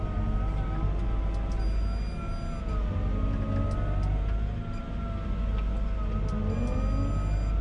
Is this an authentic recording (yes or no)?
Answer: yes